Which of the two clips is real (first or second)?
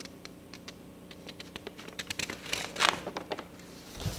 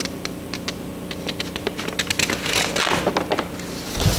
second